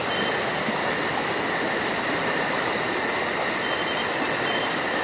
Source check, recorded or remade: recorded